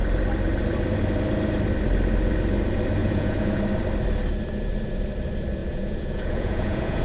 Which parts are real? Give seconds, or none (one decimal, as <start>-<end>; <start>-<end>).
0.0-3.0; 3.6-5.6